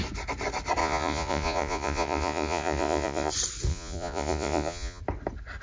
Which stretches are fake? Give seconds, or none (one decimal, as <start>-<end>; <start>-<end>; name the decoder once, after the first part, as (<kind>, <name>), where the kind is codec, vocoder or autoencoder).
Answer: 0.8-3.3 (vocoder, Vocos); 3.7-5.0